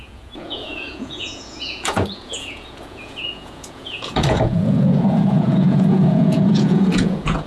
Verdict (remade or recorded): remade